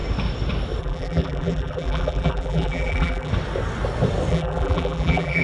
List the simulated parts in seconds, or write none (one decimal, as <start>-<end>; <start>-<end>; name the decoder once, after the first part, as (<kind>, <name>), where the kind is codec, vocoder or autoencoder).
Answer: 0.8-3.3 (vocoder, BigVGAN v2); 4.3-5.4